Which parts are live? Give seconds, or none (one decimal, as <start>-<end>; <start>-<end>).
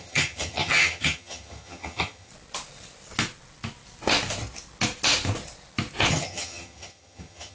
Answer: 2.3-6.1